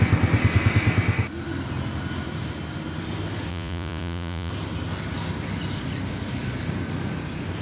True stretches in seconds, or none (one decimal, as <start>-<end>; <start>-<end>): 0.0-3.5; 4.5-7.6